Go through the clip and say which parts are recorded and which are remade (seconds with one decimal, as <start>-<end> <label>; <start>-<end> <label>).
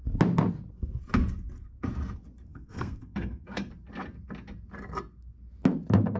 0.0-2.5 recorded; 2.5-3.7 remade; 3.7-6.2 recorded